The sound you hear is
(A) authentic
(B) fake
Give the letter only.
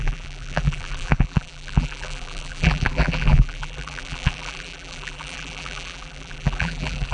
B